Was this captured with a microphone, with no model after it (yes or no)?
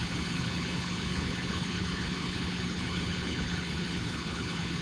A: no